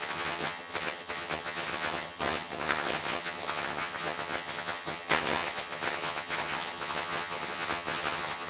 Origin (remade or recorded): remade